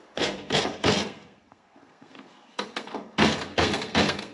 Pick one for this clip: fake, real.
fake